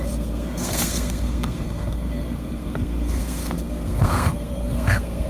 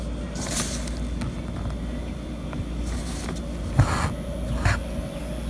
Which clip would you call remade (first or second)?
first